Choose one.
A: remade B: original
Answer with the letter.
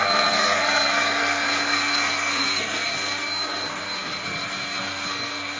A